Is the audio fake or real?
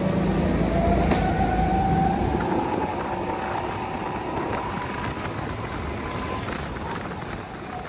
real